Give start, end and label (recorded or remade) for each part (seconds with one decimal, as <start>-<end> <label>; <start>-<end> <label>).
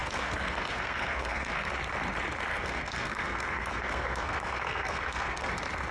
0.0-1.7 remade; 1.7-2.5 recorded; 2.5-5.5 remade; 5.5-5.9 recorded